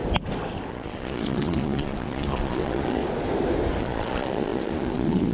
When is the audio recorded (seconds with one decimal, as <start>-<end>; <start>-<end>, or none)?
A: 0.0-0.7; 3.0-3.8